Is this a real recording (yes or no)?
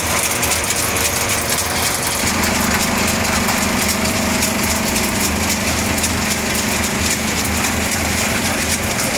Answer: yes